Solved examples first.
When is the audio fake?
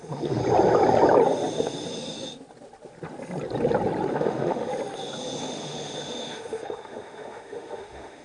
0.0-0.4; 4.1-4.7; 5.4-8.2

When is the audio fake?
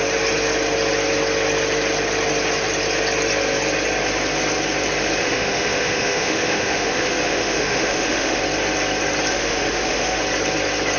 5.2-8.4; 9.3-10.2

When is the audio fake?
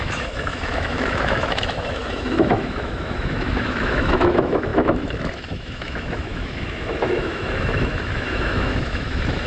0.0-9.5